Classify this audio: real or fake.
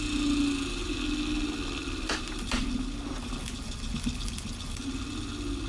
real